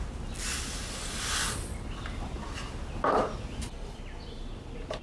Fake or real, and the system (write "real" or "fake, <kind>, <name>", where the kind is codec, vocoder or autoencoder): real